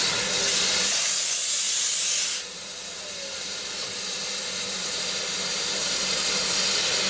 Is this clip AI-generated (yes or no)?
no